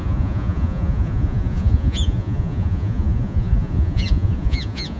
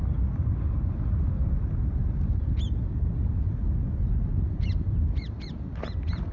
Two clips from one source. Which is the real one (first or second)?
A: second